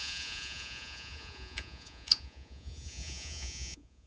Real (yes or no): no